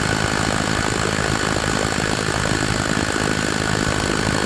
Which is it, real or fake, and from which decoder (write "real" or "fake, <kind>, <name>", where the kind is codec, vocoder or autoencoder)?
real